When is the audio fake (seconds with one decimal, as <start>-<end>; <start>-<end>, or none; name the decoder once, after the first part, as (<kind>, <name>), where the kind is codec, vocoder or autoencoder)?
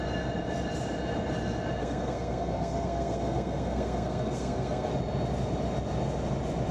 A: 1.8-4.9 (codec, SNAC)